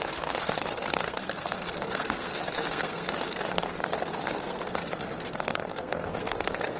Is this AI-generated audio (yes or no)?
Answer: yes